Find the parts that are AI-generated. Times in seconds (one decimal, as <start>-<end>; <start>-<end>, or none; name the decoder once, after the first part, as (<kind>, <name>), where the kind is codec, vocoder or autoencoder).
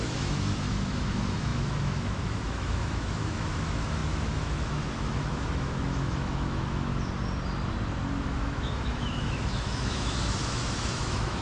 0.0-6.9 (autoencoder, DAC-VAE); 8.2-11.4